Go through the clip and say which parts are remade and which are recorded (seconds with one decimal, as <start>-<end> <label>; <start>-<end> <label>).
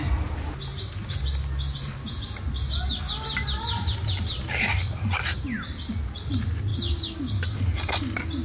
0.0-8.4 recorded